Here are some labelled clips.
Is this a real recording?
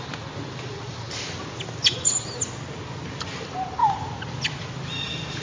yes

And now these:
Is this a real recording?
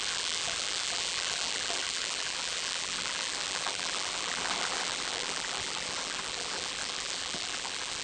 no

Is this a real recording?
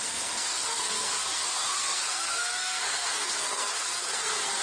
no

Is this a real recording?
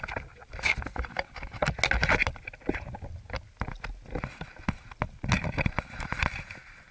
yes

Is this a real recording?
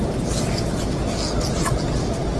yes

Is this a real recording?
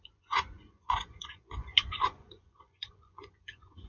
no